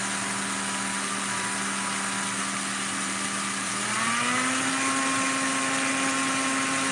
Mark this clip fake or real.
real